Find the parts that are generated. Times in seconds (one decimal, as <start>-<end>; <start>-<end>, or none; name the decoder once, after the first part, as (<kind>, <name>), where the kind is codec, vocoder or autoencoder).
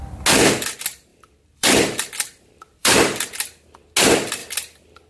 1.1-2.0 (vocoder, BigVGAN v2); 2.8-3.3; 4.4-5.1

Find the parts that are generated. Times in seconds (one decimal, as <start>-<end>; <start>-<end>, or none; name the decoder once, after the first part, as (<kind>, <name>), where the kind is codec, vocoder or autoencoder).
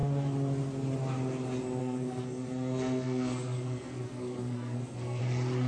1.8-5.2 (codec, SNAC)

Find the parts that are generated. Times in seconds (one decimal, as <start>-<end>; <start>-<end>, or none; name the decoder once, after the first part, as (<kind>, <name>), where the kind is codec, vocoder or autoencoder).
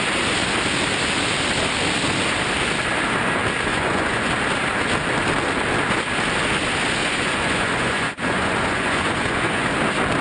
3.7-4.3 (vocoder, Vocos); 7.0-9.7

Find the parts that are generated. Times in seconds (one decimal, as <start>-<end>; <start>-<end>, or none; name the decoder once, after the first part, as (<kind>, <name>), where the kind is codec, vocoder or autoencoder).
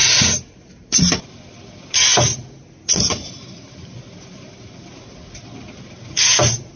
none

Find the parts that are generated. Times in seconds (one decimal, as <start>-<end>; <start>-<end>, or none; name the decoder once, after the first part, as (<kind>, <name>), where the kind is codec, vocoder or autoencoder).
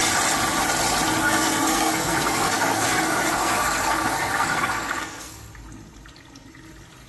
1.2-5.5 (codec, SNAC)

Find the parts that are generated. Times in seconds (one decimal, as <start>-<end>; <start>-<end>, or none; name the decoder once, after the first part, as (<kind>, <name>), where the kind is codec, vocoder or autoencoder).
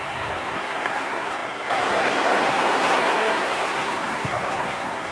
0.0-5.1 (codec, SNAC)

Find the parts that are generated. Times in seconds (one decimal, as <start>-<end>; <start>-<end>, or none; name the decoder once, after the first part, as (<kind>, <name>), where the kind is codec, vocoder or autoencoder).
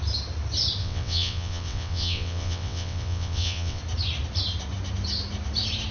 0.8-3.8 (vocoder, WaveNeXt)